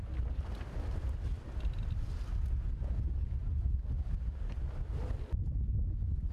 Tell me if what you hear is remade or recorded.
recorded